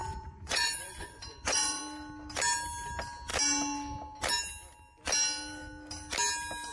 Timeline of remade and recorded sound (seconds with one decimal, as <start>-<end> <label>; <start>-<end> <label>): 0.0-1.8 remade; 1.8-6.7 recorded